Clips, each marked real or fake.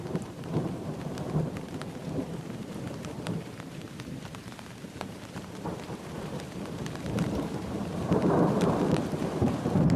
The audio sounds fake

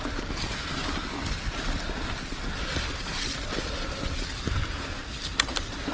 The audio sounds real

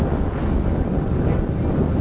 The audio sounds real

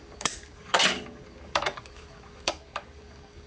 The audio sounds fake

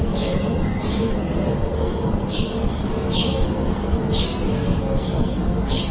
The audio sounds fake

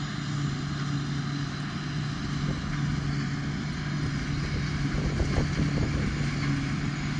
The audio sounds real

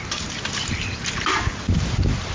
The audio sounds real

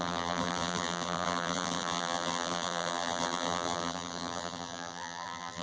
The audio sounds fake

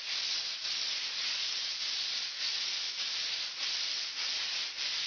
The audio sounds real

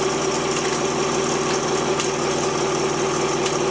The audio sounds real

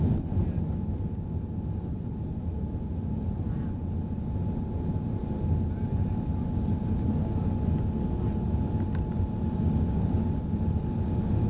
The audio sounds real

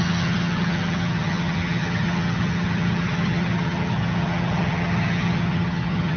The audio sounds fake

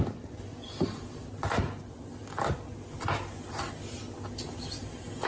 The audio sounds real